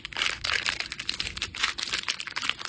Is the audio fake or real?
real